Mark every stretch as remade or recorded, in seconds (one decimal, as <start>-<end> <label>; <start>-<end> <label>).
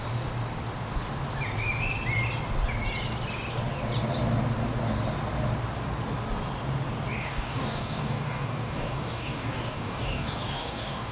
0.0-7.2 recorded; 7.2-11.1 remade